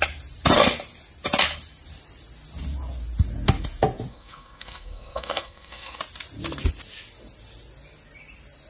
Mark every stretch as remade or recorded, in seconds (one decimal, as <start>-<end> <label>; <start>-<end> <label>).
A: 0.0-4.1 recorded; 4.1-6.0 remade; 6.0-8.7 recorded